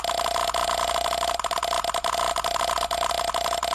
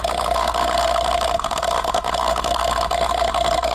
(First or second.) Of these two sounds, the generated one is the second